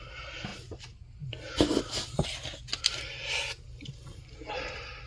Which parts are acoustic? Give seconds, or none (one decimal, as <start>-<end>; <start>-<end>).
0.0-5.1